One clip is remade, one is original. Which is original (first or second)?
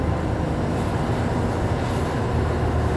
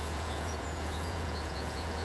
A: first